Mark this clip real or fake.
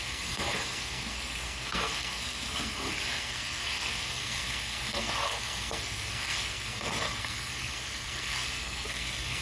fake